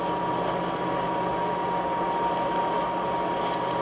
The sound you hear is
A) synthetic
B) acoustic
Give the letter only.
B